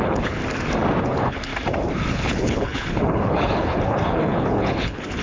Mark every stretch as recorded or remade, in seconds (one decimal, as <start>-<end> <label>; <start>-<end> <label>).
0.0-0.4 remade; 0.4-1.0 recorded; 1.0-1.5 remade; 1.5-2.1 recorded; 2.1-5.2 remade